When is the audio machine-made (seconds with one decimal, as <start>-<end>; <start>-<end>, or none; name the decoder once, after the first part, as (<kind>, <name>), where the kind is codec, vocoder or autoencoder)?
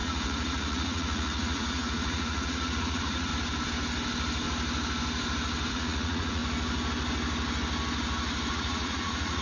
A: 0.0-3.3 (vocoder, Vocos); 5.7-6.4; 8.5-9.4